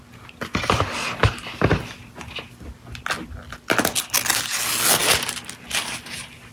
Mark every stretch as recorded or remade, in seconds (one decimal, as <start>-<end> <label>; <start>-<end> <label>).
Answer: 0.0-6.5 recorded

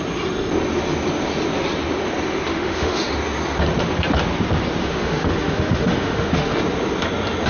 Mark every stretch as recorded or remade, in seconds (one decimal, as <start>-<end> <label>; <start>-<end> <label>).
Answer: 0.0-2.5 recorded; 2.5-3.1 remade; 3.1-4.8 recorded; 4.8-6.6 remade; 6.6-7.5 recorded

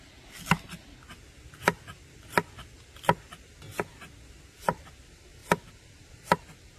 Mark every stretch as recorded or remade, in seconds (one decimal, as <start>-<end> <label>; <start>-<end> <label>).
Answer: 0.0-5.4 recorded; 5.4-6.8 remade

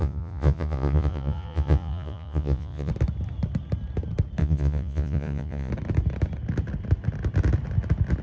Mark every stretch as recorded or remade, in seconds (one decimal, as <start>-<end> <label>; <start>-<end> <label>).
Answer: 0.0-2.9 remade; 2.9-4.4 recorded; 4.4-5.7 remade; 5.7-8.2 recorded

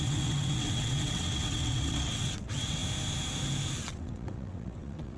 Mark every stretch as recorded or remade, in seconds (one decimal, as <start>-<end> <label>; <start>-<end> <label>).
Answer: 0.0-2.8 remade; 2.8-3.8 recorded; 3.8-5.2 remade

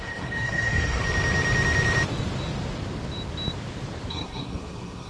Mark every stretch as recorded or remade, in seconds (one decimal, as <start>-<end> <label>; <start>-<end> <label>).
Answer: 0.0-1.0 remade; 1.0-4.1 recorded; 4.1-5.1 remade